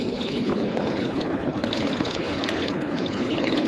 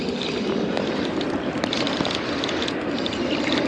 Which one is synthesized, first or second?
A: first